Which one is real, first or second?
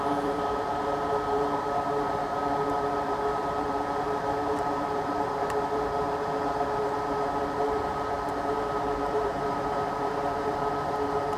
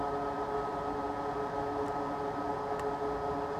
second